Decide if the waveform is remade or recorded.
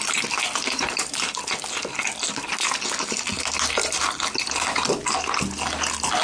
recorded